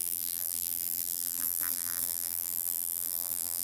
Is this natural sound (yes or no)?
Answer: no